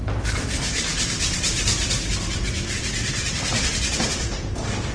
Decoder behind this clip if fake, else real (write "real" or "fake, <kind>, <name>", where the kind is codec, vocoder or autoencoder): fake, vocoder, BigVGAN v2